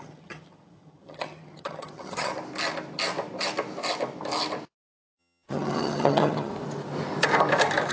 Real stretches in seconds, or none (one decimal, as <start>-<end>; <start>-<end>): 2.3-5.2; 6.5-7.9